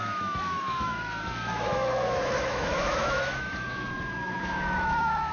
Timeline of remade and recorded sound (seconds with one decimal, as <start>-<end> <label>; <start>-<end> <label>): 0.0-5.3 remade